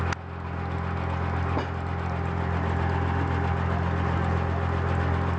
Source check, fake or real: real